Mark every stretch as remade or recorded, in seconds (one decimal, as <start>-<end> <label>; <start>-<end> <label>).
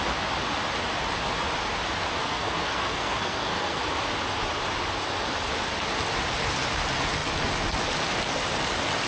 0.0-2.2 recorded; 2.2-3.8 remade; 3.8-9.1 recorded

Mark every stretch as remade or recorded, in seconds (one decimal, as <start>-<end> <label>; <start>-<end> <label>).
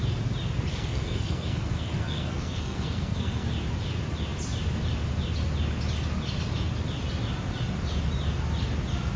0.0-0.7 recorded; 0.7-3.5 remade; 3.5-9.2 recorded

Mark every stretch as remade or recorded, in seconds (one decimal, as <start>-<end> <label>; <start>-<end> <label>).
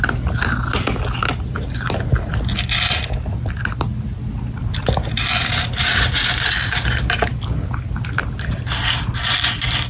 0.0-9.9 recorded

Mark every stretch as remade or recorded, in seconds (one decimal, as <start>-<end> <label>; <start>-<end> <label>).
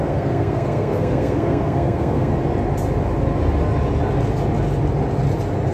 0.0-2.3 remade; 2.3-5.7 recorded